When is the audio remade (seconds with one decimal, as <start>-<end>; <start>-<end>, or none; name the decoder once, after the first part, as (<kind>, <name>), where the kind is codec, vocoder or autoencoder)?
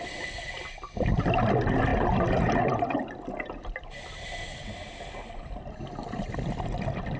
none